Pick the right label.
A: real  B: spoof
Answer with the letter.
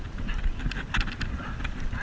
A